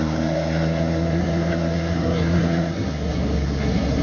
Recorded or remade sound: remade